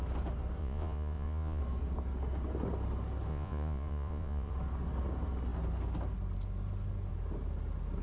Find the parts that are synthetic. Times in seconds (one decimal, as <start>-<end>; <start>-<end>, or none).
0.6-1.6; 3.3-4.5